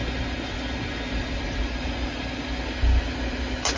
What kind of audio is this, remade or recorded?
recorded